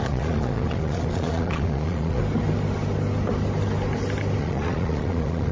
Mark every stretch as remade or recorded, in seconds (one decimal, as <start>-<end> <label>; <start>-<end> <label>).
0.0-2.2 remade; 2.2-4.4 recorded; 4.4-5.5 remade